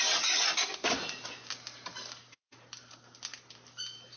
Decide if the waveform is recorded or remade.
recorded